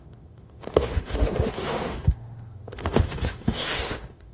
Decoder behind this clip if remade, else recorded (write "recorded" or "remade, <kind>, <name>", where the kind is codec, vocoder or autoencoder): remade, autoencoder, DAC-VAE